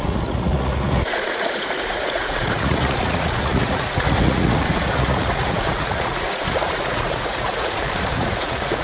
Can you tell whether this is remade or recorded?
remade